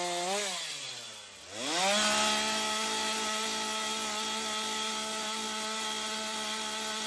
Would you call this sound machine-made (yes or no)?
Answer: no